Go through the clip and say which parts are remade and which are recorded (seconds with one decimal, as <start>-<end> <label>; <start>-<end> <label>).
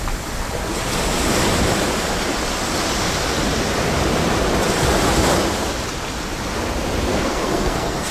0.0-7.1 recorded; 7.1-8.1 remade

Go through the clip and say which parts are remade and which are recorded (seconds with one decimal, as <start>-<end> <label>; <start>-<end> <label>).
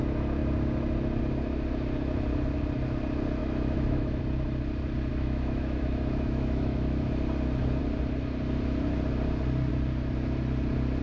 0.0-3.4 recorded; 3.4-4.2 remade; 4.2-5.1 recorded; 5.1-7.1 remade; 7.1-11.0 recorded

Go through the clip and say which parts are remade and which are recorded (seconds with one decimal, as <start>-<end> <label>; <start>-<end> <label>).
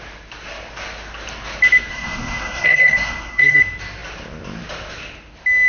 0.0-1.9 recorded; 1.9-3.6 remade; 3.6-5.7 recorded